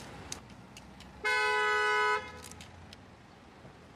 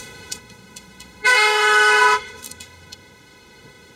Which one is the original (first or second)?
first